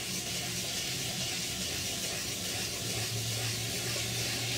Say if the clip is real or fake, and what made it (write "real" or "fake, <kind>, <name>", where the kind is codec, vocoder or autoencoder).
real